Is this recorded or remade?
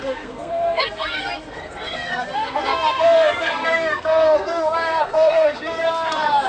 remade